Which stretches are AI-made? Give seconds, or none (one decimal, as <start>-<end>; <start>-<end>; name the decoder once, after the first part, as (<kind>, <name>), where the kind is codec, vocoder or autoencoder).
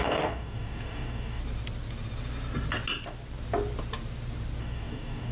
0.0-1.4 (codec, DAC); 4.6-5.3